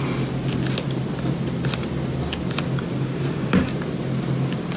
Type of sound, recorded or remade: recorded